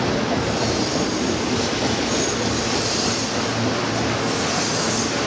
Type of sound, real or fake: real